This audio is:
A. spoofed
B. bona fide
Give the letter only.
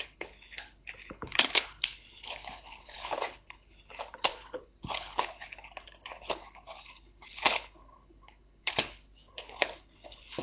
A